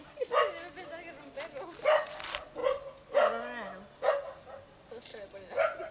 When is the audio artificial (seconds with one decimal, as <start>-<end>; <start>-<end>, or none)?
none